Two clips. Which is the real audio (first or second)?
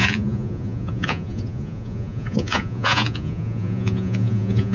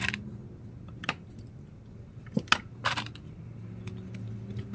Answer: second